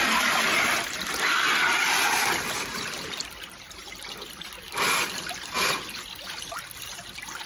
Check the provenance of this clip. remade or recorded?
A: recorded